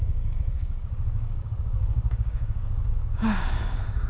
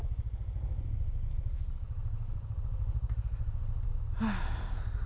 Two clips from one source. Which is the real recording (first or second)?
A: second